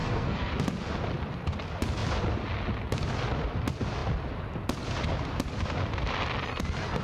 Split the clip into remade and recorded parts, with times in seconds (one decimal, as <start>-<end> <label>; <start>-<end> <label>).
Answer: 0.0-0.5 remade; 0.5-7.0 recorded